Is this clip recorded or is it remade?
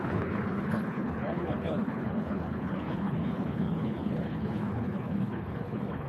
remade